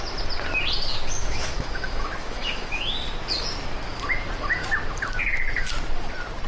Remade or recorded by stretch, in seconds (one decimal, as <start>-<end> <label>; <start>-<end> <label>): 0.0-1.2 recorded; 1.2-2.9 remade; 2.9-6.5 recorded